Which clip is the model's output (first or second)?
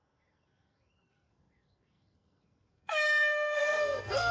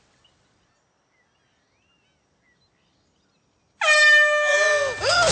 first